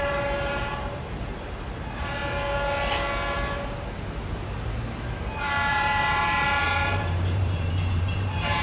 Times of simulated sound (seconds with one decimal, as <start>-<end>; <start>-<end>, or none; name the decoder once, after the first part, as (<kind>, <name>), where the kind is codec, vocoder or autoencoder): 0.0-2.2 (vocoder, BigVGAN v2); 5.7-8.6